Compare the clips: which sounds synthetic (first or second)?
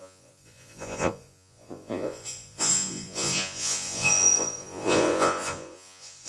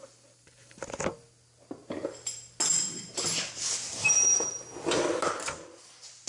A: first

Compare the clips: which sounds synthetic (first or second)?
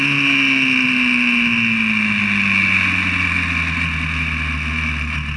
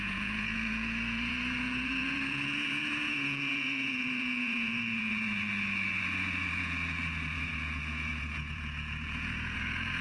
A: second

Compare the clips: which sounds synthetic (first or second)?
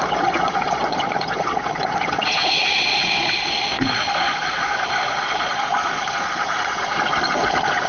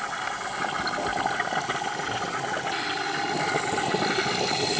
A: first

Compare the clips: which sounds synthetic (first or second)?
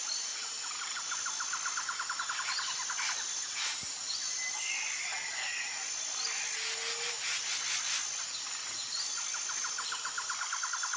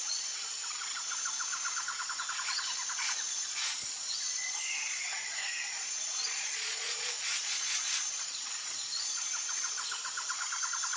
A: second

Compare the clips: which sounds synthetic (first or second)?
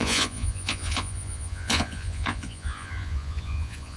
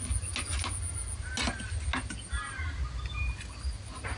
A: first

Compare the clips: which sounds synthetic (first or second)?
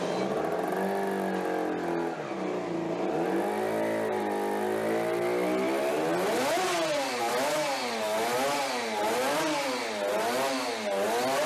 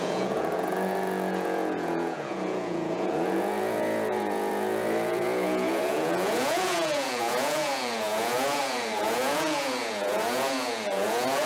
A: second